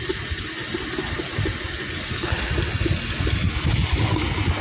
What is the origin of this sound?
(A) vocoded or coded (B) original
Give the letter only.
B